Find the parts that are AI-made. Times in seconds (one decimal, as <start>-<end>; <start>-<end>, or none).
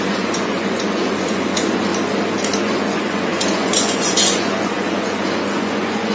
0.0-1.9; 2.6-6.1